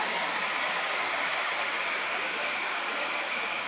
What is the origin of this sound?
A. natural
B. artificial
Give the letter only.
B